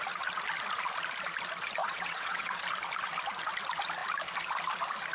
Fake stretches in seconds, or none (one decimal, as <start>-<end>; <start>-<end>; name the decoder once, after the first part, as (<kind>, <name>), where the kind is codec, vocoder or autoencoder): 1.8-2.6 (vocoder, WaveNeXt)